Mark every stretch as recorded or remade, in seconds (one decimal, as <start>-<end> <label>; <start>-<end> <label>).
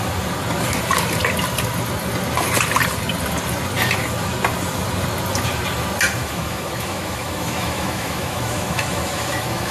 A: 0.0-6.2 recorded; 6.2-9.7 remade